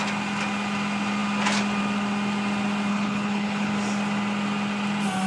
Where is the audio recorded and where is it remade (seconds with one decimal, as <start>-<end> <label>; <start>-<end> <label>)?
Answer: 0.0-2.9 recorded; 2.9-3.7 remade; 3.7-5.3 recorded